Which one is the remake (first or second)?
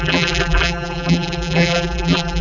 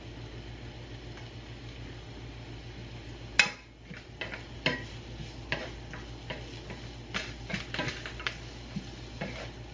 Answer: first